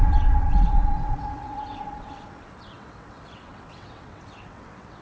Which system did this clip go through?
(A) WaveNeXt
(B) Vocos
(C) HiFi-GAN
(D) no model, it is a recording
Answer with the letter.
A